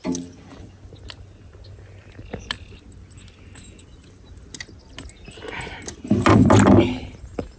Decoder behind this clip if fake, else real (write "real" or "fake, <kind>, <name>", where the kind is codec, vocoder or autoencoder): real